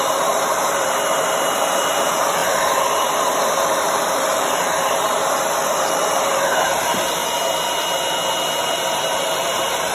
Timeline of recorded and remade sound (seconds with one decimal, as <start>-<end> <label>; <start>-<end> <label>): 0.0-7.2 remade; 7.2-8.6 recorded; 8.6-9.9 remade